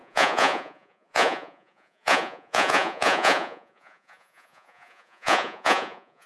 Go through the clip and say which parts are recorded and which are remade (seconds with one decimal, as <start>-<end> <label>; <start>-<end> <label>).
0.0-6.3 remade